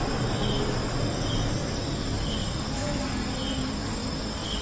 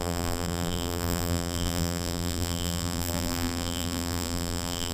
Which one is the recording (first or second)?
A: first